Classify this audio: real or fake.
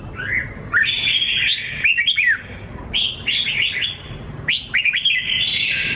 real